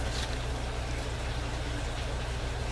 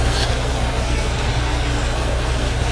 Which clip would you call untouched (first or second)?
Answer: first